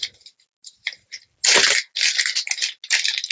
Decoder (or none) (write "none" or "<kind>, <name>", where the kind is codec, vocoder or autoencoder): none